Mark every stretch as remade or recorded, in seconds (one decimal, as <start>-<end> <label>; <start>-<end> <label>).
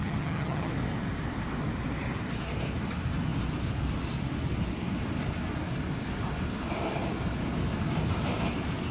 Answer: 0.0-0.7 remade; 0.7-8.9 recorded